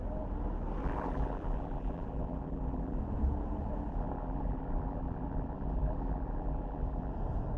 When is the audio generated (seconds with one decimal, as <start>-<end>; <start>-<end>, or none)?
0.8-3.0; 3.9-7.1